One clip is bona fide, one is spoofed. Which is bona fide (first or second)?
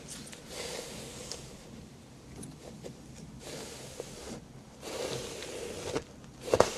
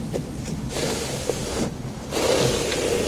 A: first